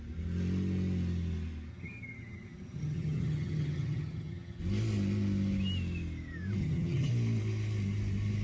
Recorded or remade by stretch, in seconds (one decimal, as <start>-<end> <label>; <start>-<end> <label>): 0.0-1.7 recorded; 1.7-4.6 remade; 4.6-6.6 recorded; 6.6-7.1 remade; 7.1-8.4 recorded